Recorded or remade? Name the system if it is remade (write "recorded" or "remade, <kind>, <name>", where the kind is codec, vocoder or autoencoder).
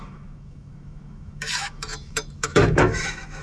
remade, autoencoder, DAC-VAE